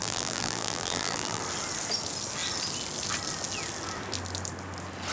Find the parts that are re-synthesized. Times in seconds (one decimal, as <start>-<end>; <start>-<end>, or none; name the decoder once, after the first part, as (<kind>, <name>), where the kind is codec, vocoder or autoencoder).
0.0-1.4 (vocoder, BigVGAN v2)

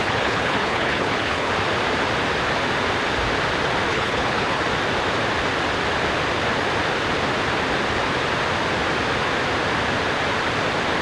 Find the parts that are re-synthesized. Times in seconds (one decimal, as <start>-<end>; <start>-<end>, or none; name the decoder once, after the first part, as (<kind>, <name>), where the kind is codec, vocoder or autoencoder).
0.0-1.5 (codec, HILCodec); 3.9-4.6

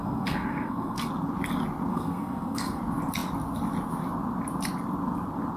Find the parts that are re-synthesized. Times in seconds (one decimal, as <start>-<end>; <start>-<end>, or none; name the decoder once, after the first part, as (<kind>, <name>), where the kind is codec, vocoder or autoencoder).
0.0-1.1 (codec, SNAC); 1.9-2.8

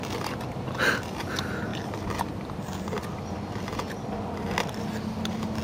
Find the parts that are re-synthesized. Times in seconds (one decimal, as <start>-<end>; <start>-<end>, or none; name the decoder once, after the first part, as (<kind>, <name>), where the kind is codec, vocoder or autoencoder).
none

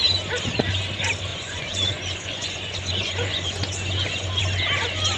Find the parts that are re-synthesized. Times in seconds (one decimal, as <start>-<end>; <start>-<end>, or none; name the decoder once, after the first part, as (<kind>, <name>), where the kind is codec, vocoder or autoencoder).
1.3-4.4 (vocoder, Vocos)

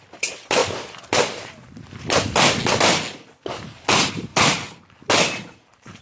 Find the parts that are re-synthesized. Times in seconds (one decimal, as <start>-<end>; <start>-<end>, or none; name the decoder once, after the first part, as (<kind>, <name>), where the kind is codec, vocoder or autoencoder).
0.6-2.3 (vocoder, BigVGAN v2); 4.3-4.8

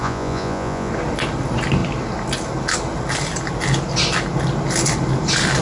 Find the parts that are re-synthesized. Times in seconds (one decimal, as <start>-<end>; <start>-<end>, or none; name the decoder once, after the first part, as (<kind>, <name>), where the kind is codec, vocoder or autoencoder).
0.0-0.9 (vocoder, Vocos)

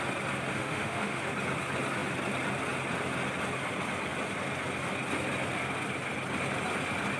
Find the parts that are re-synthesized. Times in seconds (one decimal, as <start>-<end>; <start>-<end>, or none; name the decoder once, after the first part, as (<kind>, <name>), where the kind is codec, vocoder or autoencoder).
0.5-1.2 (autoencoder, DAC-VAE)